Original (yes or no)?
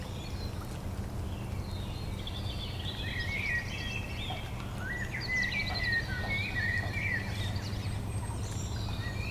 yes